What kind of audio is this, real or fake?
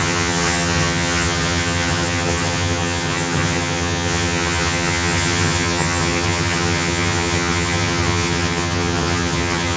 fake